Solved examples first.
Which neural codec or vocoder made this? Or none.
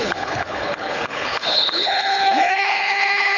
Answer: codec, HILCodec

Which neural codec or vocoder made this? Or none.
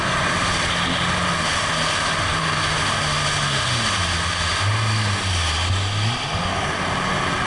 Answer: none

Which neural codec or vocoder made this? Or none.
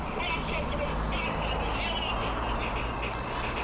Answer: none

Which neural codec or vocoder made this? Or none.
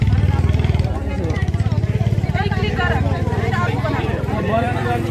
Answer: vocoder, BigVGAN v2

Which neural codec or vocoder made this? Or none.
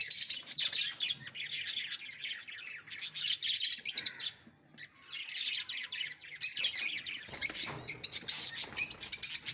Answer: none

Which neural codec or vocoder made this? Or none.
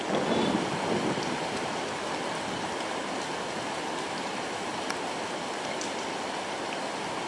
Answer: none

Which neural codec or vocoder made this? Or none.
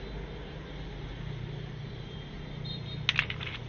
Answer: none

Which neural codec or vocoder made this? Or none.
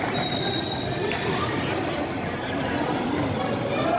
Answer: none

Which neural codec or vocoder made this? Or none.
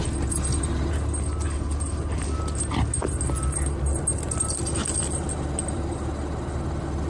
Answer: none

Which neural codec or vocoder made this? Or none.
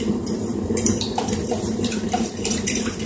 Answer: vocoder, BigVGAN v2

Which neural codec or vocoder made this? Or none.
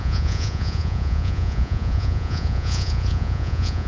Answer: vocoder, Vocos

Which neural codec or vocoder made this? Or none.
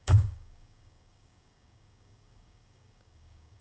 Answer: codec, DAC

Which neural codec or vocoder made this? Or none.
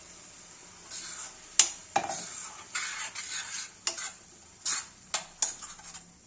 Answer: none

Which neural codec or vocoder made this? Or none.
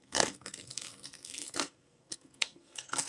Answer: codec, SNAC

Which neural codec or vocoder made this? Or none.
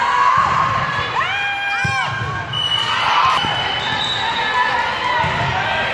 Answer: none